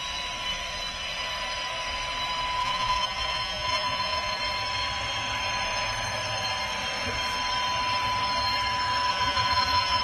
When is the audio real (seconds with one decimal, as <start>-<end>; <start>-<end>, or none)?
0.0-2.6; 4.4-9.1